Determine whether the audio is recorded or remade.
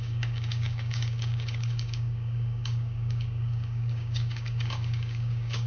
remade